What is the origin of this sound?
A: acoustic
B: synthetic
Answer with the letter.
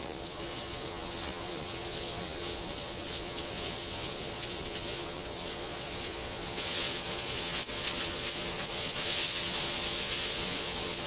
B